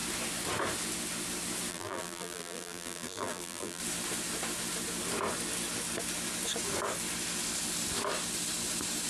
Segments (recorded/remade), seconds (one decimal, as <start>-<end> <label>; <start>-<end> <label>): 0.0-1.7 recorded; 1.7-3.8 remade; 3.8-9.1 recorded